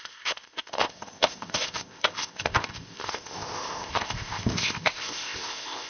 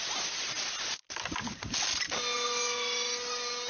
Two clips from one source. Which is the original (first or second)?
second